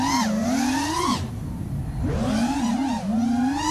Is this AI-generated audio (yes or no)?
no